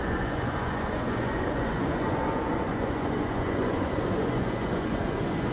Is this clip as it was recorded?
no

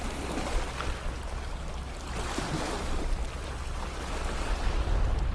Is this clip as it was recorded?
yes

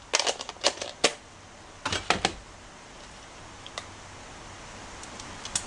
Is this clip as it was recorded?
yes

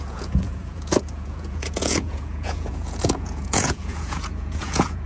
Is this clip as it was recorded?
no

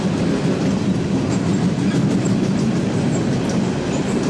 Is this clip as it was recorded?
yes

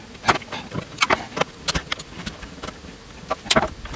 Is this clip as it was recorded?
yes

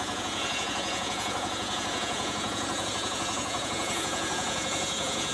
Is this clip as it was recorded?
no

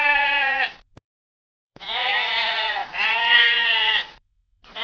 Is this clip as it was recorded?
no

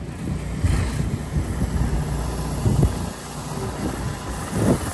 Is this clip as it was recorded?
yes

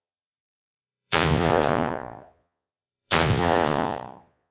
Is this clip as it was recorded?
no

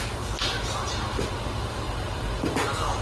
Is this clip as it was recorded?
yes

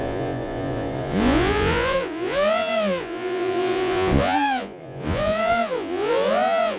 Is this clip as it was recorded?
no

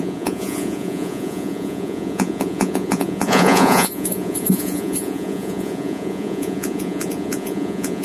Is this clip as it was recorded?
no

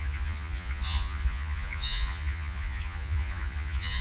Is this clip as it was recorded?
no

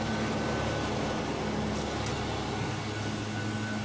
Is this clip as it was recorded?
yes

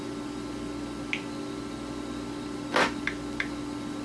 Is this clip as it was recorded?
yes